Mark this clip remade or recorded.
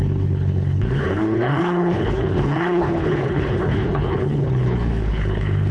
remade